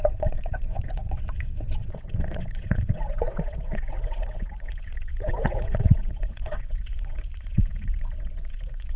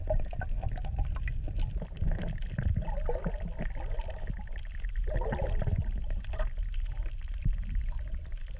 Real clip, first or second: second